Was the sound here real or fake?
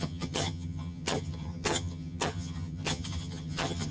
fake